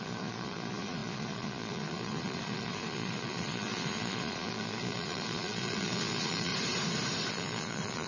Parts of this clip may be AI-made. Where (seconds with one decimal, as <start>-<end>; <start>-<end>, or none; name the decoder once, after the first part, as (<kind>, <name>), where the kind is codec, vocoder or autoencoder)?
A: 0.0-6.5 (vocoder, Vocos); 7.3-8.1